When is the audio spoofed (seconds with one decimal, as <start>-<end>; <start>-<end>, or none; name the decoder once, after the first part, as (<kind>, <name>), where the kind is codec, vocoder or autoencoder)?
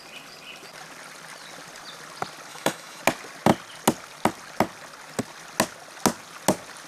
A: 2.5-3.0 (autoencoder, DAC-VAE)